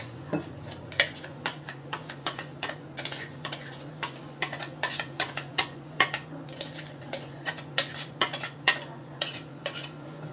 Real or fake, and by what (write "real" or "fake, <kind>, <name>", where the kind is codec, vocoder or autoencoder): fake, vocoder, Vocos